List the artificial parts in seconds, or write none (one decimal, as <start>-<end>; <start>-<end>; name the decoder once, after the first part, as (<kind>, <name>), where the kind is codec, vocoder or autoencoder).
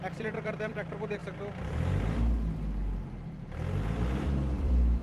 0.0-1.2 (vocoder, BigVGAN v2); 4.2-5.0